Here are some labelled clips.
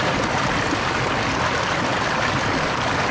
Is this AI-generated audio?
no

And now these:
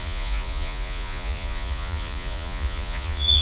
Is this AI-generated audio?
yes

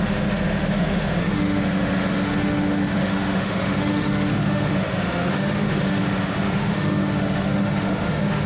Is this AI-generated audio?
yes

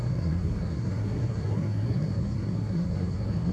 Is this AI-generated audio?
yes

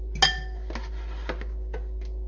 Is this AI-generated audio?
no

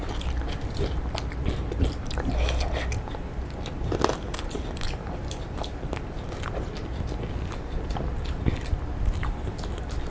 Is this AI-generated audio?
no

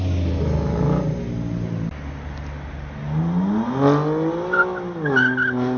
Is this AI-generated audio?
no